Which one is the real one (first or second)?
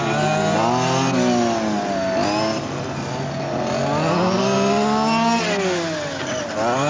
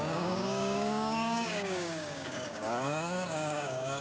first